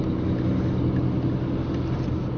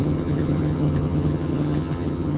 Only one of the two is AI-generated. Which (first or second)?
second